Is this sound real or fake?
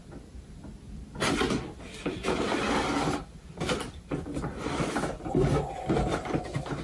real